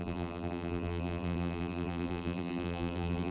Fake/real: fake